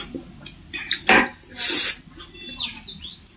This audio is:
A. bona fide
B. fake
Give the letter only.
A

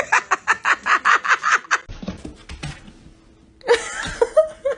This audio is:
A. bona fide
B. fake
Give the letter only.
A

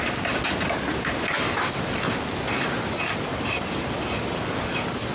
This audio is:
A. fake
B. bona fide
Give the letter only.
B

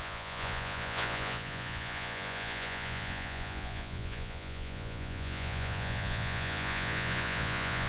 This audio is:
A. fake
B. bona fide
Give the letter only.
A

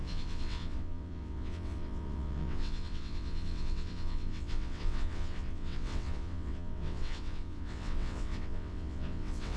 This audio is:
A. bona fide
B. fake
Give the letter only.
B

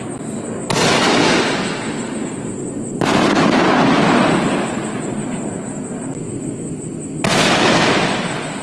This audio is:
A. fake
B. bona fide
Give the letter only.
B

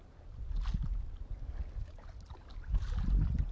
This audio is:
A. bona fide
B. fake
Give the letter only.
A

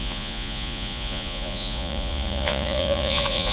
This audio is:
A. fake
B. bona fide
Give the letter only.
A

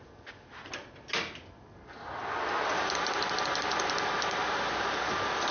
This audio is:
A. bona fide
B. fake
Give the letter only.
A